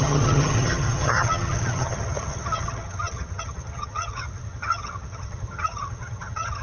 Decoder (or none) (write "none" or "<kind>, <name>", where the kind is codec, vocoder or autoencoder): vocoder, HiFi-GAN